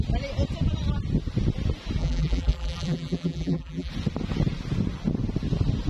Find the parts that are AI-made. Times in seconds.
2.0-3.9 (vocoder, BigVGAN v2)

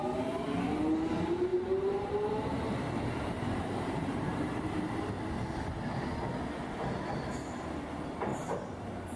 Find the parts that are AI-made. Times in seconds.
1.5-5.1 (vocoder, BigVGAN v2); 8.3-9.2

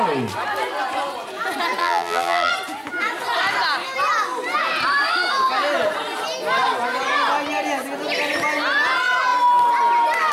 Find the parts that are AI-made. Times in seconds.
1.8-2.5 (vocoder, BigVGAN v2)

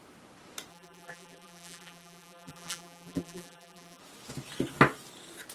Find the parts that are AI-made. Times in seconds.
0.7-4.0 (vocoder, BigVGAN v2)

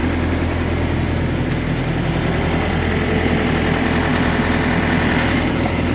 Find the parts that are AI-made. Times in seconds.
3.5-5.9 (vocoder, BigVGAN v2)

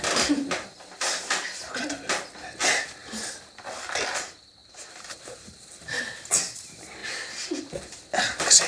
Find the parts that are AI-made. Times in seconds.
4.6-6.0 (vocoder, BigVGAN v2)